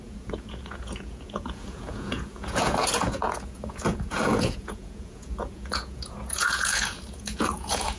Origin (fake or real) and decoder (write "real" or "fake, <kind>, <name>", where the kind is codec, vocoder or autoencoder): fake, vocoder, Vocos